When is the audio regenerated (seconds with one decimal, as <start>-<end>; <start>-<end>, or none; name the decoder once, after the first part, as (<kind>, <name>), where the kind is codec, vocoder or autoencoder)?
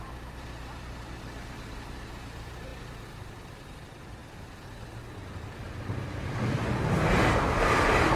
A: 0.0-4.2 (vocoder, BigVGAN v2); 5.0-8.2